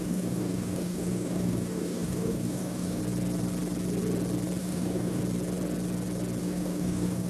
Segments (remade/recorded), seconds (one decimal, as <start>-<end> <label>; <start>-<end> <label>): 0.0-3.0 remade; 3.0-4.6 recorded; 4.6-5.2 remade; 5.2-6.4 recorded; 6.4-7.3 remade